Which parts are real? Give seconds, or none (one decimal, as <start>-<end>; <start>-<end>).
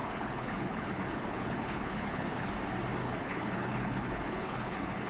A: 2.5-3.0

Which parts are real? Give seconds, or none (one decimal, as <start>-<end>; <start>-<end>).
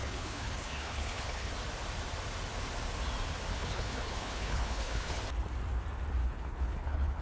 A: 1.5-3.5; 5.2-6.2